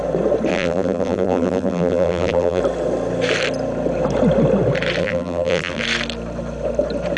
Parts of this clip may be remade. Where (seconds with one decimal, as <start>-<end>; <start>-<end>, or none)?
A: 0.5-2.6; 5.0-5.8